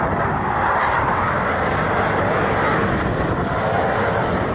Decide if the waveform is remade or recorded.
recorded